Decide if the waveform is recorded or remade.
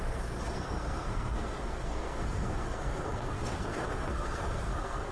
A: remade